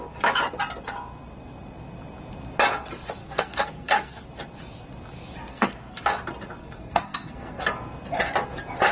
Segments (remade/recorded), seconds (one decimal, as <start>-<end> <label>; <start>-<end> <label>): 0.0-3.2 recorded; 3.2-4.3 remade; 4.3-5.5 recorded; 5.5-6.0 remade; 6.0-6.6 recorded; 6.6-7.6 remade; 7.6-8.9 recorded